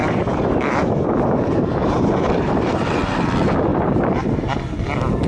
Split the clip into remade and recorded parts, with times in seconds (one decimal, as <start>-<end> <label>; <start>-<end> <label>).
0.0-3.0 remade; 3.0-3.7 recorded; 3.7-4.5 remade; 4.5-5.3 recorded